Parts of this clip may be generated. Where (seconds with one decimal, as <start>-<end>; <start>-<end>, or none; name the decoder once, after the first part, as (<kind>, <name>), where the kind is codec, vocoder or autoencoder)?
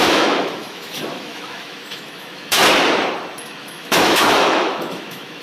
0.0-2.6 (autoencoder, DAC-VAE); 3.4-5.4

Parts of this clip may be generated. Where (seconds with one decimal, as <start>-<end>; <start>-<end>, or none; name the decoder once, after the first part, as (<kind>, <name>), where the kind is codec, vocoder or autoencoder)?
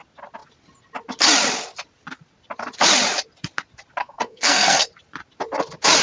4.0-4.9 (codec, SNAC)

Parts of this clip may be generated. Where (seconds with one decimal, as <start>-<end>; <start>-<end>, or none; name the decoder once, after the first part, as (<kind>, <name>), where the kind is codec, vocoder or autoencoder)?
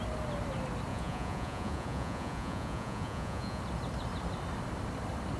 0.9-3.6 (vocoder, Vocos)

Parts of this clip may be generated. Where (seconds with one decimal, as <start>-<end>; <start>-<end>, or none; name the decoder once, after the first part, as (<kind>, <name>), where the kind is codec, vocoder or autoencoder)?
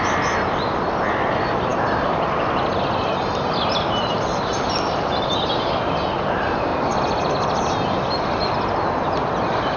none